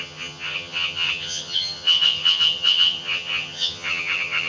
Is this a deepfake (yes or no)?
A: yes